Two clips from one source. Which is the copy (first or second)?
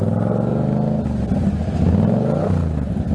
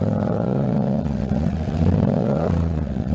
second